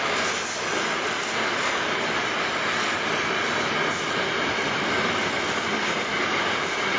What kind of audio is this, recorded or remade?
recorded